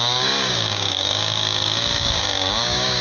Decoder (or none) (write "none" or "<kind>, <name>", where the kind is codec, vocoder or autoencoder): codec, DAC